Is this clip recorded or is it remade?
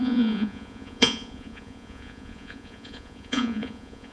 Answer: remade